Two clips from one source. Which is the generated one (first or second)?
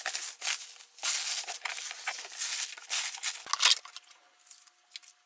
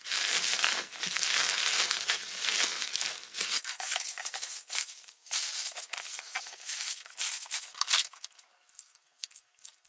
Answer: second